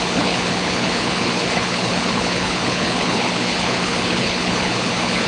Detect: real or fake fake